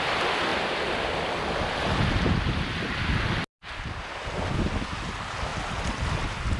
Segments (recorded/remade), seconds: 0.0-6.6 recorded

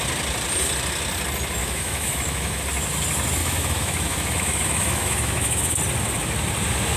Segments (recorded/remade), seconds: 0.0-1.6 recorded; 1.6-2.6 remade; 2.6-3.4 recorded; 3.4-5.8 remade; 5.8-7.0 recorded